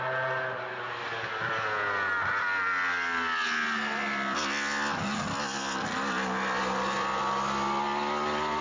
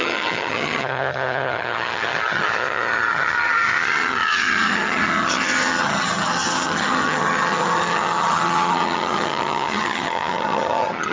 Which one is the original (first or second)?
first